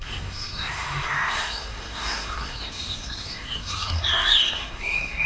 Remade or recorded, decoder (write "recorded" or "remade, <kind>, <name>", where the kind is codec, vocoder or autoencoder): remade, codec, SNAC